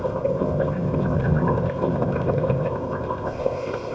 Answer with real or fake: fake